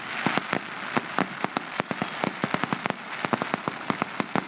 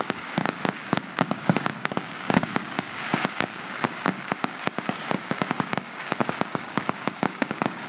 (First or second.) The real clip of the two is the first